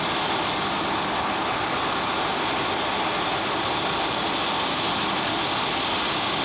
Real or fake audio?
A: real